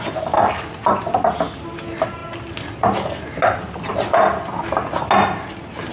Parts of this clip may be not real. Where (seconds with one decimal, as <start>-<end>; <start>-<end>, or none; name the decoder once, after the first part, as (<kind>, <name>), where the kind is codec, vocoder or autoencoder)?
none